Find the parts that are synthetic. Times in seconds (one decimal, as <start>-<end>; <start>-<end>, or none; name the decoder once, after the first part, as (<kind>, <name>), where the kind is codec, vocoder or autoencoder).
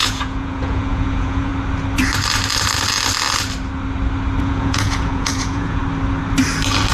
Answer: 0.0-1.5 (vocoder, Vocos); 4.4-5.8